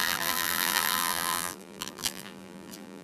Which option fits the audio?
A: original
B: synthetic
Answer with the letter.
B